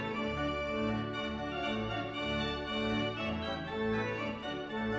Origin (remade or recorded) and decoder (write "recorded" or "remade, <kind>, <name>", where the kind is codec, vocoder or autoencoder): recorded